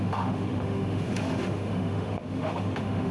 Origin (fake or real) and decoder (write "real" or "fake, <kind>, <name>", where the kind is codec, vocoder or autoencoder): fake, autoencoder, DAC-VAE